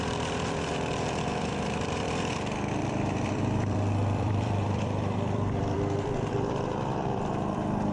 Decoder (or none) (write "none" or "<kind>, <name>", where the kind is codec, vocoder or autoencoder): vocoder, BigVGAN v2